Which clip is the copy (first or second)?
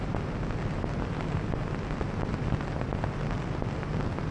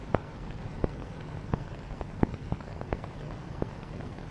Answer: second